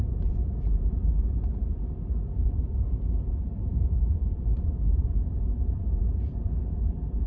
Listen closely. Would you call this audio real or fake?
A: fake